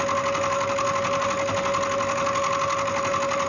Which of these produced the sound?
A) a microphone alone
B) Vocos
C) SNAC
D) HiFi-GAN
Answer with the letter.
A